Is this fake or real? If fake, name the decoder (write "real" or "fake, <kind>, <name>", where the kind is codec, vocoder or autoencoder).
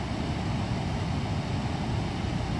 real